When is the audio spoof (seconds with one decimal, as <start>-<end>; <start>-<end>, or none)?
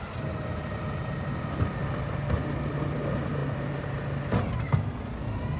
0.0-1.8; 2.3-3.4; 4.6-5.6